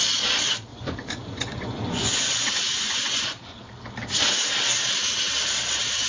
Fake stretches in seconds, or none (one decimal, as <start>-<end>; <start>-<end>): 0.7-3.6